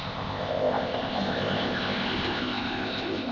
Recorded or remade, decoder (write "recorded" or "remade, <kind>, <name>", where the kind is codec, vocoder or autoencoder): remade, codec, ZipCodec